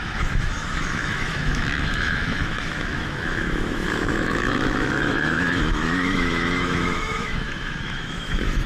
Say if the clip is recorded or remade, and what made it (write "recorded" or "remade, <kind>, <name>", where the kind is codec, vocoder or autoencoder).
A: remade, autoencoder, DAC-VAE